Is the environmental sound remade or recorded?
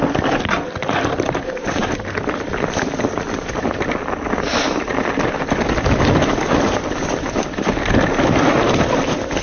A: remade